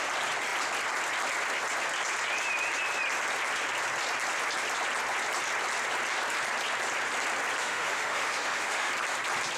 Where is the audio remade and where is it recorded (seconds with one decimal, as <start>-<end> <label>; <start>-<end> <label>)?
0.0-7.6 recorded; 7.6-8.9 remade; 8.9-9.6 recorded